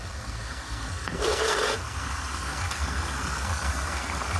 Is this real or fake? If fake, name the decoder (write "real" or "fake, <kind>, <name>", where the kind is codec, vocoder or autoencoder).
fake, codec, SNAC